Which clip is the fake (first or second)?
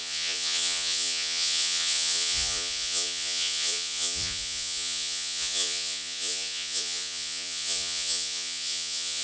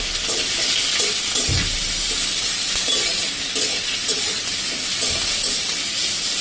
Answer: first